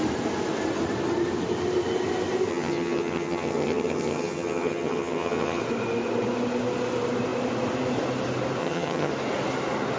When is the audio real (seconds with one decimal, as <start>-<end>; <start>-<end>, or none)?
0.0-2.5; 5.6-8.6; 9.1-10.0